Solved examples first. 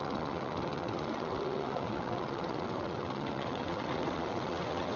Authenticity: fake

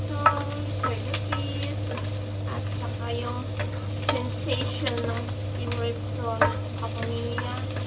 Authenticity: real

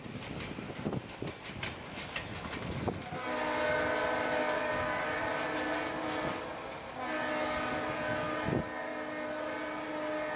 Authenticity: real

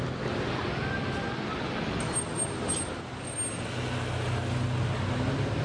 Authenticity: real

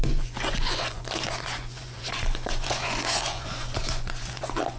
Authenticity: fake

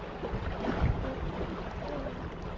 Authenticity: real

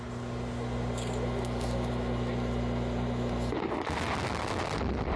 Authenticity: real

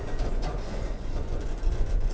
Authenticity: fake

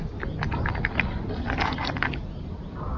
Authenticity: real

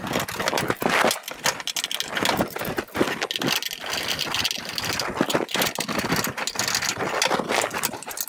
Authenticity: real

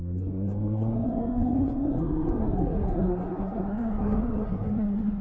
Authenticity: fake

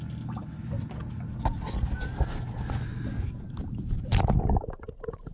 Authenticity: real